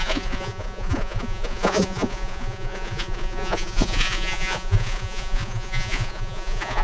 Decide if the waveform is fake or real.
fake